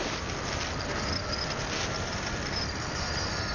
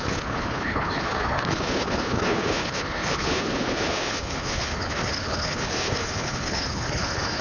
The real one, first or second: first